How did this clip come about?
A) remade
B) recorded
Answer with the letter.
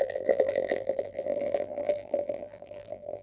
A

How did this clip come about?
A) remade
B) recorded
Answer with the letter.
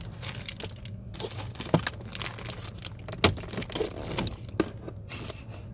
B